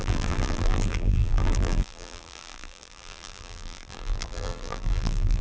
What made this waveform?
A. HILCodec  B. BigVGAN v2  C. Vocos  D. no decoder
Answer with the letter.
B